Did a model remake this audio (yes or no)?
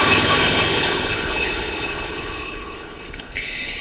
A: yes